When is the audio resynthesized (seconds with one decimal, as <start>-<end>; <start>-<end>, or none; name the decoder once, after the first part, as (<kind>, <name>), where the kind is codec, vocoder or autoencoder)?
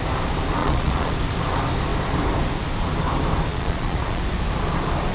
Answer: 0.6-1.1 (vocoder, Vocos); 3.5-4.2